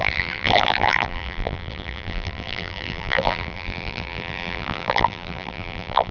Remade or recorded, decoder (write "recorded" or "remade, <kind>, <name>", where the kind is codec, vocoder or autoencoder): remade, vocoder, BigVGAN v2